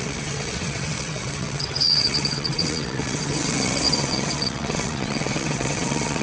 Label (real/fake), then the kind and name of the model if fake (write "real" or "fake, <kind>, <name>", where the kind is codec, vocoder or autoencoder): fake, vocoder, WaveNeXt